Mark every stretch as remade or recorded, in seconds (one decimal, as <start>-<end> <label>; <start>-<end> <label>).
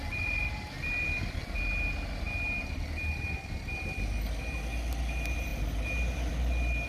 0.0-6.9 recorded